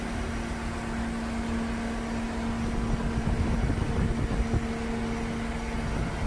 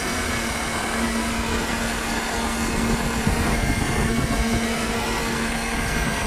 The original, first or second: first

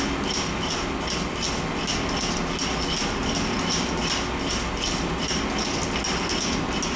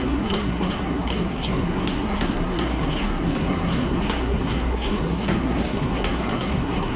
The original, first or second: first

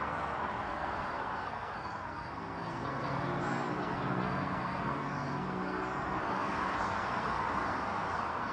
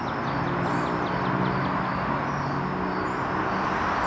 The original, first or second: second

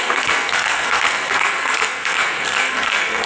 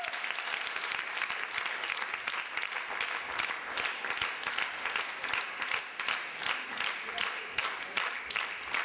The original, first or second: second